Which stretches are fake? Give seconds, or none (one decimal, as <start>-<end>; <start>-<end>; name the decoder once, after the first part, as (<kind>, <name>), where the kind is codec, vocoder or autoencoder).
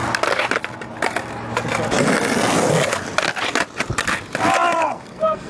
4.8-5.5 (codec, SNAC)